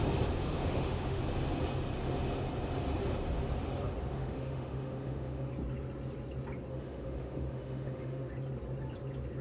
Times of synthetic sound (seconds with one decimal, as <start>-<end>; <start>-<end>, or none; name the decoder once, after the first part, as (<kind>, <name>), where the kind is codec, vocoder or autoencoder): 0.4-1.2 (autoencoder, DAC-VAE); 4.1-5.5; 6.7-8.3